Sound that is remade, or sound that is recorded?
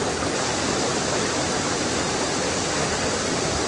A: recorded